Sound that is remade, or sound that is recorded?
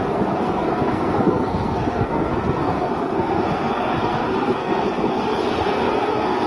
remade